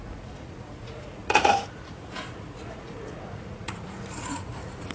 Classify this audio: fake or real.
fake